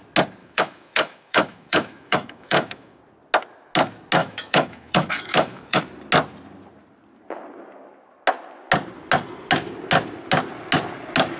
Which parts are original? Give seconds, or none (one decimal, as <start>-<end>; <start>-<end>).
0.0-0.4; 3.0-4.2; 5.8-11.4